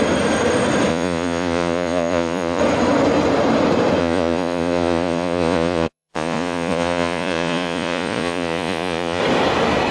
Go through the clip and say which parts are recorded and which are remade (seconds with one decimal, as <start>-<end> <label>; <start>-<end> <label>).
0.0-0.9 recorded; 0.9-2.6 remade; 2.6-4.0 recorded; 4.0-9.2 remade; 9.2-9.9 recorded